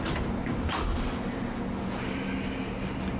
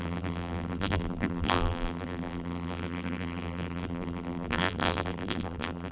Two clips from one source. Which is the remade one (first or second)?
second